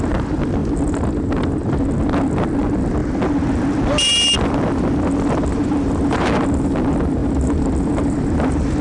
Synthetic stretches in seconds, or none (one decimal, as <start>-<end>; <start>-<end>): 5.5-6.7; 7.2-8.8